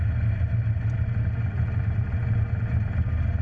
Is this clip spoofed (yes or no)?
no